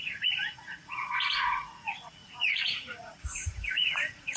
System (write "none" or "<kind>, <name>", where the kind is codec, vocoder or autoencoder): vocoder, Vocos